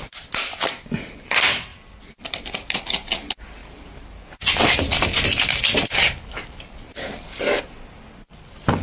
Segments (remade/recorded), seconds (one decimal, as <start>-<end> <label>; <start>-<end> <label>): 0.0-1.7 recorded; 1.7-2.4 remade; 2.4-3.6 recorded; 3.6-7.6 remade; 7.6-8.8 recorded